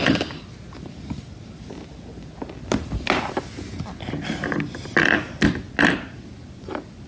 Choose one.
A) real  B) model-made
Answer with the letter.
A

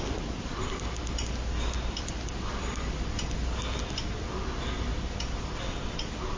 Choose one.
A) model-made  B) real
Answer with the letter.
B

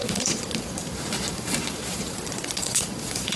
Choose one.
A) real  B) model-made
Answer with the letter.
B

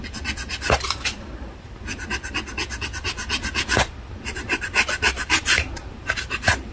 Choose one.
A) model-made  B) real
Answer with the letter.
B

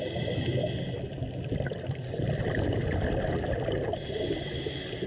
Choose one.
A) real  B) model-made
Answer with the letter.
A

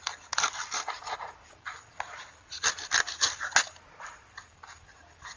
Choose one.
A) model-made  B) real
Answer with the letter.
B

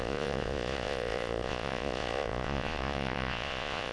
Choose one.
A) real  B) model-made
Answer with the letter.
B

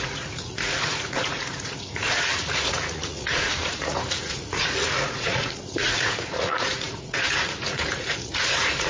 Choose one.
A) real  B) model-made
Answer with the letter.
B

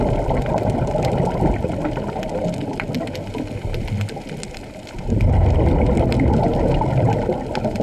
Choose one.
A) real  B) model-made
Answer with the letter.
A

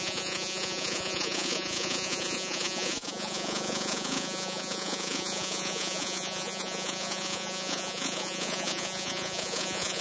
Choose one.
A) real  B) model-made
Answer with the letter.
B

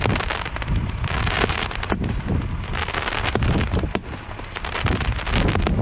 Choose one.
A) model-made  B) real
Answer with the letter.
B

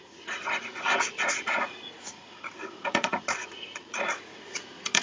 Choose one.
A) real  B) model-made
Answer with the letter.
B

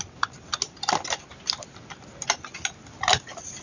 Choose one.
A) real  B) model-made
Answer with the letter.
A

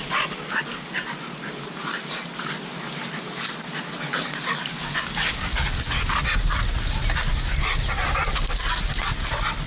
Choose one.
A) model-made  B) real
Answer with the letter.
B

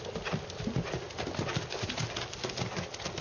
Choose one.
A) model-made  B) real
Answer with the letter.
B